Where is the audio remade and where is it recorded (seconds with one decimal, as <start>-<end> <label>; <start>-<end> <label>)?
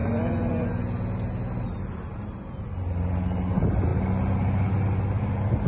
0.0-0.7 remade; 0.7-5.7 recorded